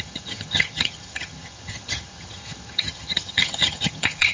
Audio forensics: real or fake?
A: fake